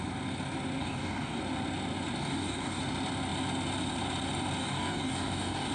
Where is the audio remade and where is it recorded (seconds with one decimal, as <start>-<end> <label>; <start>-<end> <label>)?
0.0-0.8 recorded; 0.8-1.4 remade; 1.4-2.2 recorded; 2.2-2.8 remade; 2.8-4.6 recorded; 4.6-5.7 remade